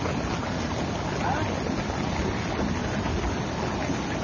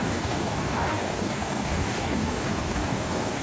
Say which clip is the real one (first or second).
first